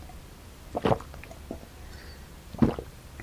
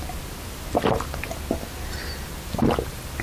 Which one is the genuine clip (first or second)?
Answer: second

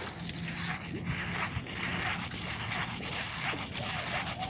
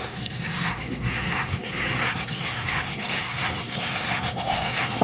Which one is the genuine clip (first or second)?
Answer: first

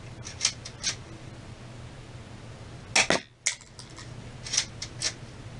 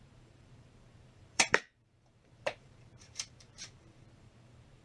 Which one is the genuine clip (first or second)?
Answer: first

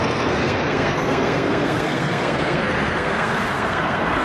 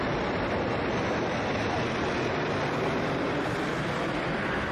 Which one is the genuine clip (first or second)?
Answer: second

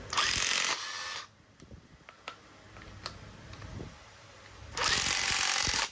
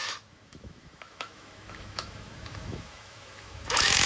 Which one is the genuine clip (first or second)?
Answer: first